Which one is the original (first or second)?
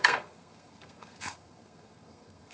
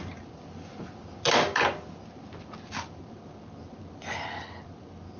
second